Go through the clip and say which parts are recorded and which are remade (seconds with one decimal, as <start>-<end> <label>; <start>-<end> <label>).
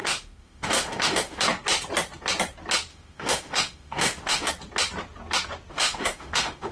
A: 0.0-1.4 remade; 1.4-2.9 recorded; 2.9-4.5 remade; 4.5-5.7 recorded; 5.7-6.7 remade